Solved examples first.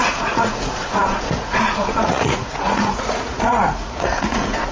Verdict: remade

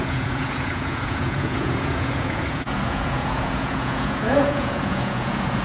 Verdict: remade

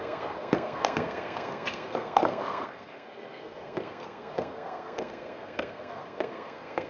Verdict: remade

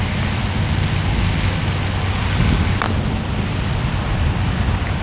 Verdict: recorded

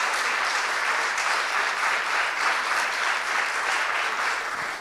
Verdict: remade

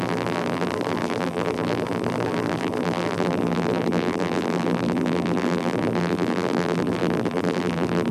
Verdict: remade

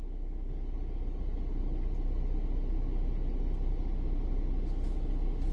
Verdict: recorded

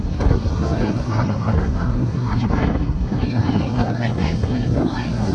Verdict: remade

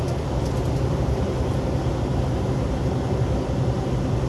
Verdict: recorded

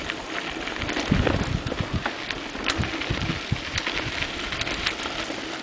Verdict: recorded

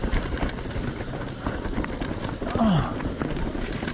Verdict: recorded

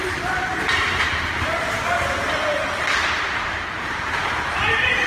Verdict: remade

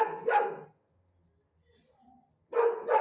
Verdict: recorded